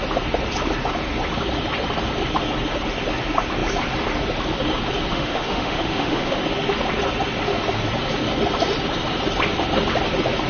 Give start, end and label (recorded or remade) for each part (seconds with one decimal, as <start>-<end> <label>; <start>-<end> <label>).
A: 0.0-5.1 recorded; 5.1-6.4 remade; 6.4-10.5 recorded